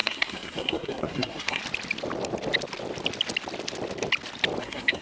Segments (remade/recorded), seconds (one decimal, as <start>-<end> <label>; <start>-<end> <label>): 0.0-1.6 remade; 1.6-4.6 recorded; 4.6-5.0 remade